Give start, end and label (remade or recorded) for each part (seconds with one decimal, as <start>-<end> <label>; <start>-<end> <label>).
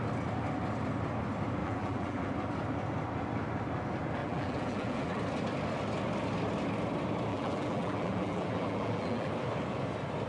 0.0-1.6 recorded; 1.6-2.3 remade; 2.3-4.2 recorded; 4.2-5.2 remade; 5.2-7.3 recorded; 7.3-9.3 remade; 9.3-10.3 recorded